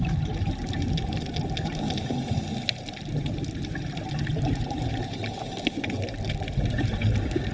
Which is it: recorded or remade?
recorded